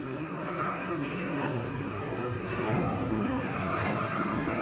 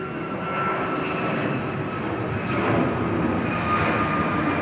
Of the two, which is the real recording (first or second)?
second